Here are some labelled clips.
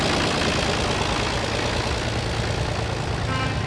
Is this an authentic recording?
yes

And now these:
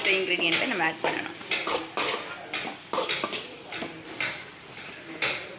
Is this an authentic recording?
yes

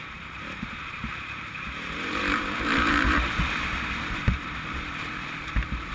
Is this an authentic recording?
no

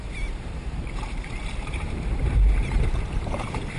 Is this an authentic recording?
no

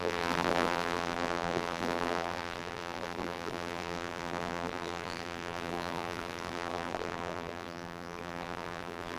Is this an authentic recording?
no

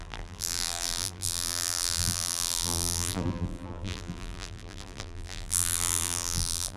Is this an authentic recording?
no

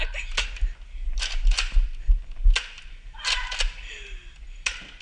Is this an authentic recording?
yes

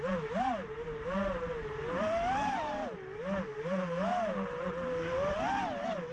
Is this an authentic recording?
no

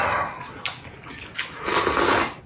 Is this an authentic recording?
yes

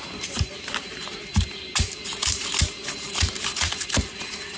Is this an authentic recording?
yes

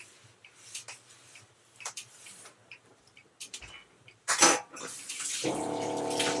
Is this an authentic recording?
no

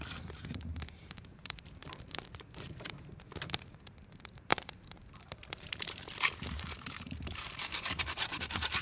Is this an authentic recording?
no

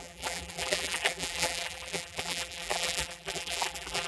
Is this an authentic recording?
no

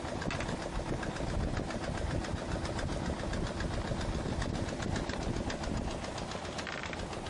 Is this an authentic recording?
yes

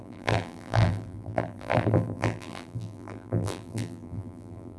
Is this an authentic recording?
no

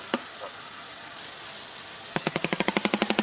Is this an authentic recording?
yes